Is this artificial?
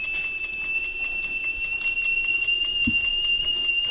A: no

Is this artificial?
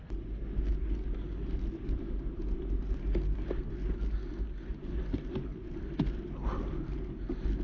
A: no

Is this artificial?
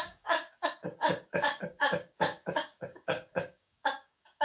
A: yes